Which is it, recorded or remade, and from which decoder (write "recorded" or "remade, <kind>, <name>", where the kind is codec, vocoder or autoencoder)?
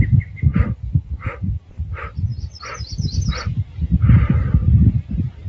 remade, vocoder, BigVGAN v2